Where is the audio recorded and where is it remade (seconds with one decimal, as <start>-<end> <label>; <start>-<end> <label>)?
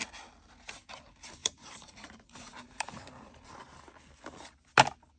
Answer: 0.0-1.4 recorded; 1.4-3.1 remade; 3.1-5.2 recorded